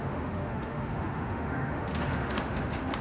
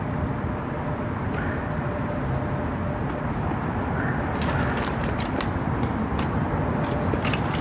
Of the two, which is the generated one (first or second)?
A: first